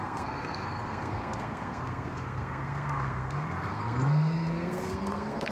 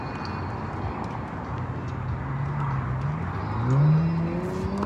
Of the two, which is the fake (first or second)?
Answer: first